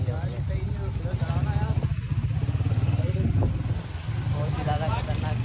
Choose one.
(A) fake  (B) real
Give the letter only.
B